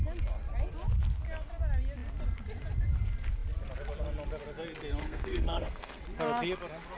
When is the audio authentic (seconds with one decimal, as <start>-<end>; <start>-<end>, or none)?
0.0-5.0; 6.0-7.0